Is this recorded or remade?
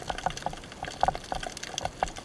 recorded